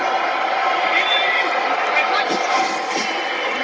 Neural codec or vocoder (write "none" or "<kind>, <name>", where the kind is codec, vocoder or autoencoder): none